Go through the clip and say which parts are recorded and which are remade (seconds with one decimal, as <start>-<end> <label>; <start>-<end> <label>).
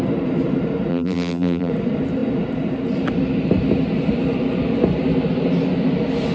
0.0-0.9 recorded; 0.9-1.7 remade; 1.7-6.3 recorded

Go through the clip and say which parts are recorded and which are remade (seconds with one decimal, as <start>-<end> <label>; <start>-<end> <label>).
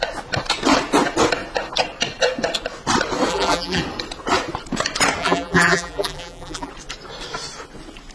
0.0-3.3 recorded; 3.3-3.8 remade; 3.8-5.2 recorded; 5.2-6.7 remade; 6.7-8.1 recorded